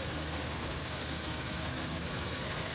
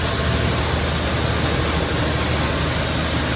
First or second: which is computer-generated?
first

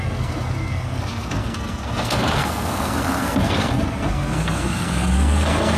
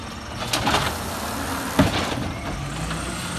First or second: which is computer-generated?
first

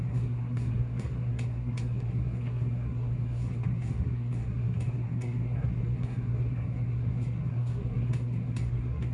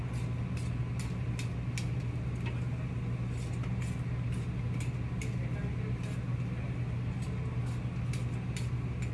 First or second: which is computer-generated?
first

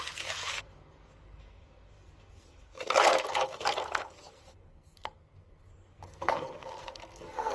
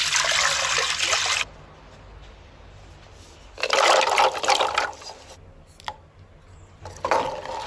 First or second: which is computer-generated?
first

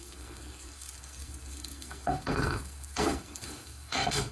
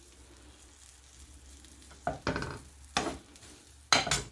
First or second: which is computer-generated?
first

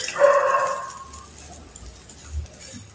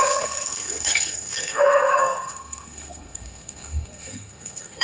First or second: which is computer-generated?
second